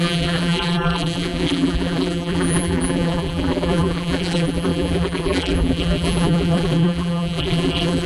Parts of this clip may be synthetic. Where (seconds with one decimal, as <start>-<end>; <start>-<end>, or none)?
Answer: 0.0-8.1